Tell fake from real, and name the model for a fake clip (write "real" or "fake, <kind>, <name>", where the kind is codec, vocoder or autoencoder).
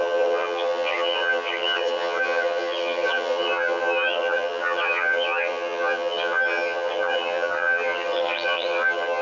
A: fake, vocoder, HiFi-GAN